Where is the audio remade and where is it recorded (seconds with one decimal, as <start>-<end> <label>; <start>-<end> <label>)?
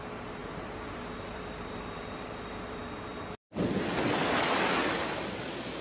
0.0-0.4 recorded; 0.4-2.8 remade; 2.8-5.8 recorded